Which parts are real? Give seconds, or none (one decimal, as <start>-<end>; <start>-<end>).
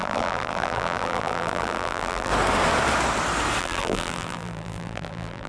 2.3-3.6